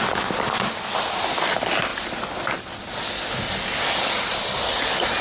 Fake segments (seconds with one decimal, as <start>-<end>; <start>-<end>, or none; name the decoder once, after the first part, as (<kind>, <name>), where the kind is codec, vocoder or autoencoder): none